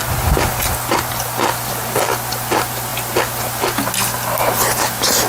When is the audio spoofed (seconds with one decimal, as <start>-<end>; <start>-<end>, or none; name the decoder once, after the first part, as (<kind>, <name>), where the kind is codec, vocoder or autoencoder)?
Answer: none